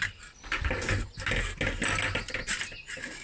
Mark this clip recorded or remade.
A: recorded